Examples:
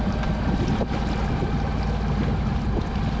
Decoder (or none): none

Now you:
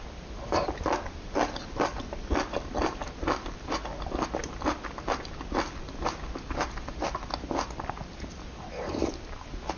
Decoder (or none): none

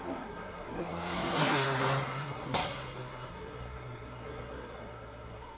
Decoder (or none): codec, SNAC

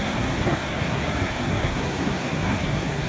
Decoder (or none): codec, SNAC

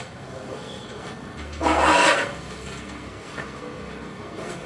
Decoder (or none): codec, SNAC